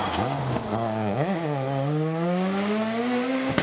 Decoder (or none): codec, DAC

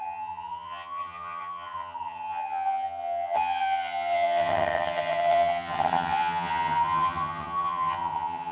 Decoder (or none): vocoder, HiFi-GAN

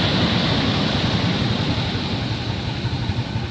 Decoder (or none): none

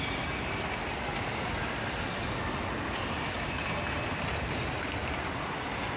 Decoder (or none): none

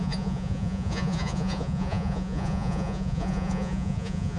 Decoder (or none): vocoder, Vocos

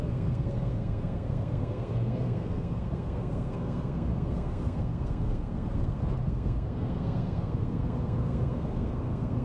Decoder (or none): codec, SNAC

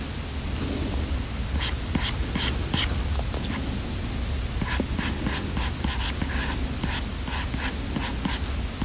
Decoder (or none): none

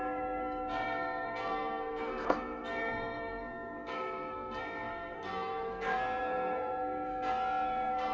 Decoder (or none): codec, SNAC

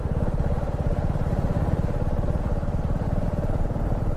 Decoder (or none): vocoder, BigVGAN v2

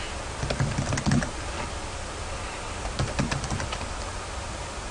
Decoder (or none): none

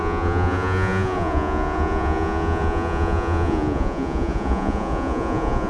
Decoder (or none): vocoder, Vocos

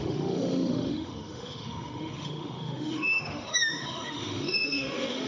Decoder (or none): autoencoder, DAC-VAE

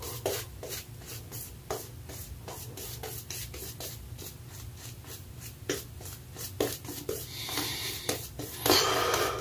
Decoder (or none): none